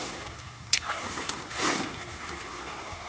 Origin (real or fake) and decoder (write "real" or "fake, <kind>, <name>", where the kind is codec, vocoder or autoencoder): fake, codec, SNAC